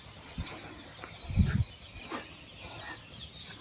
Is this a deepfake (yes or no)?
no